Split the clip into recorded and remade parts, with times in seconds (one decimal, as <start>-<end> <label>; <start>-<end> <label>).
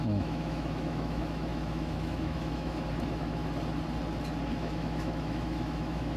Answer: 0.0-3.4 remade; 3.4-4.5 recorded; 4.5-6.2 remade